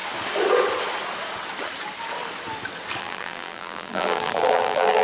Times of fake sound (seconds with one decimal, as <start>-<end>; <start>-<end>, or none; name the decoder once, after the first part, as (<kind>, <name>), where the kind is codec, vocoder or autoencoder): 3.0-5.0 (vocoder, BigVGAN v2)